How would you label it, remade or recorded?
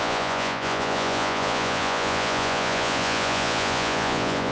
remade